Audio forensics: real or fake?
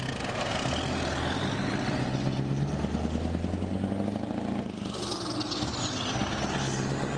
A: real